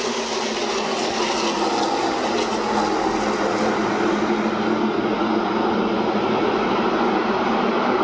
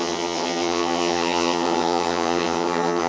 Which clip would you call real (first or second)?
first